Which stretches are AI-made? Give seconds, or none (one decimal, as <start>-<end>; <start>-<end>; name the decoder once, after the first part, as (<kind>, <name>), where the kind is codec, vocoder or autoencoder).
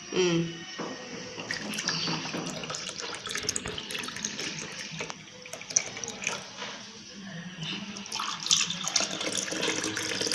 2.6-3.2 (vocoder, BigVGAN v2)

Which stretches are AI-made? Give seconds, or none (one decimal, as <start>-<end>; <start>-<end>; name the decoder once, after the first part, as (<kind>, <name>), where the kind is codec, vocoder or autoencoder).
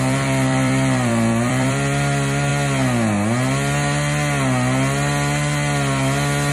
0.0-2.5 (vocoder, BigVGAN v2)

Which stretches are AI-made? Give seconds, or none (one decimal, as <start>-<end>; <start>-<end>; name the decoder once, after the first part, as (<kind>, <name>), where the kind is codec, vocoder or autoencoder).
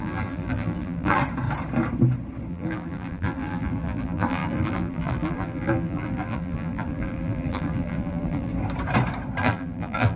0.0-1.2 (vocoder, BigVGAN v2); 2.5-8.5; 9.4-10.2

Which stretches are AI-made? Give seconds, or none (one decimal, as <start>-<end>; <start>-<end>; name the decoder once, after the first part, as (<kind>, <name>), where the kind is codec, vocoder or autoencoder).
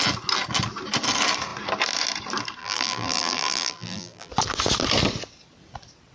2.6-4.3 (vocoder, BigVGAN v2)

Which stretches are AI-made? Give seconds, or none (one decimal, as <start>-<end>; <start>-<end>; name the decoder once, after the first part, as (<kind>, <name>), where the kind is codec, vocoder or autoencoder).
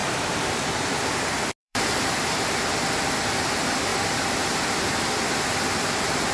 0.0-0.7 (vocoder, BigVGAN v2); 1.6-2.5; 3.9-4.5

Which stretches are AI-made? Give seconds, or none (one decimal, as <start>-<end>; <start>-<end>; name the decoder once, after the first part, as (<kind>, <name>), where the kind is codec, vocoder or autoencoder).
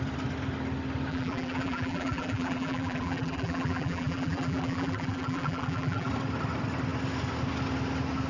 1.1-6.1 (vocoder, BigVGAN v2)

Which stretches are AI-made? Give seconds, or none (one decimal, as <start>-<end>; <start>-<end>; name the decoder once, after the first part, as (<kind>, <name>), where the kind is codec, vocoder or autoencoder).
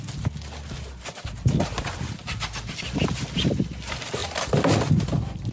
4.2-5.5 (vocoder, BigVGAN v2)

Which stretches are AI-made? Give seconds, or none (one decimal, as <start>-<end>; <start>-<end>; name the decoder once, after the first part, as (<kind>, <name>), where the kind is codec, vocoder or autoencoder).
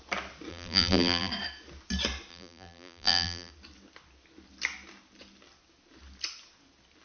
0.5-1.3 (vocoder, BigVGAN v2); 2.3-3.5